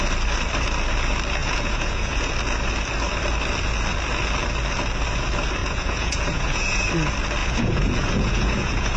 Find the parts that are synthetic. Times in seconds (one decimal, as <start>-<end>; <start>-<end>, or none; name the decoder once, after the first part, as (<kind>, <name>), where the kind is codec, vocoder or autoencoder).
1.4-2.3 (vocoder, Vocos); 5.6-6.8; 7.4-9.0